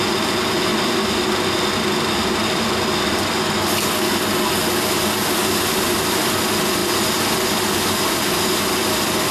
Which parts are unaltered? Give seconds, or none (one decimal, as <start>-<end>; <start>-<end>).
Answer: 0.0-9.3